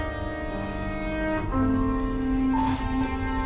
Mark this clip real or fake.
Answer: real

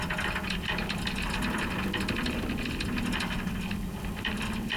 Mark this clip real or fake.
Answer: real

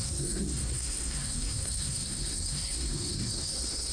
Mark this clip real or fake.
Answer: fake